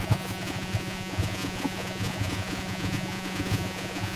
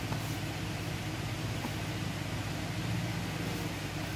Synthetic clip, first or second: first